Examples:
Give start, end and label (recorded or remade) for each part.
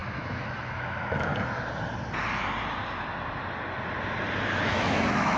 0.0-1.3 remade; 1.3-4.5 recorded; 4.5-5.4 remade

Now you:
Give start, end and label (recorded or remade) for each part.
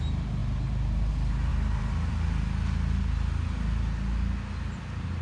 0.0-1.5 recorded; 1.5-2.1 remade; 2.1-5.2 recorded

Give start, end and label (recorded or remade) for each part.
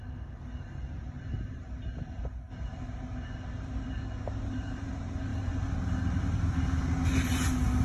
0.0-7.8 recorded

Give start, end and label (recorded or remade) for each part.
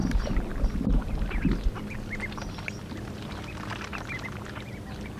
0.0-5.2 recorded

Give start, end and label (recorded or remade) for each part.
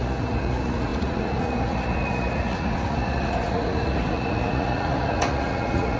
0.0-6.0 remade